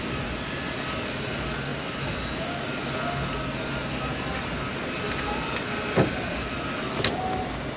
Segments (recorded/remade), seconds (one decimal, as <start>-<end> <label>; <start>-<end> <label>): 0.0-7.8 recorded